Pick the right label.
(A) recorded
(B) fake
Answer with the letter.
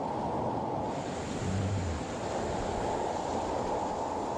A